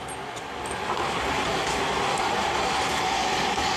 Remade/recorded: recorded